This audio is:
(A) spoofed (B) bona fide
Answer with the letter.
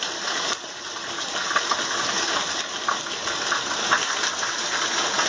B